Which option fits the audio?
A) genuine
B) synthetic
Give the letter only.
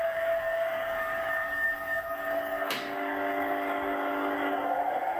B